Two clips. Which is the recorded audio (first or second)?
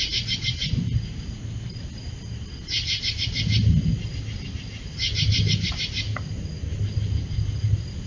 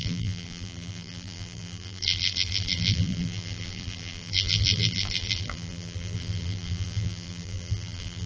first